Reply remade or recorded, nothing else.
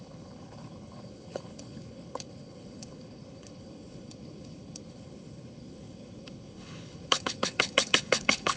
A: remade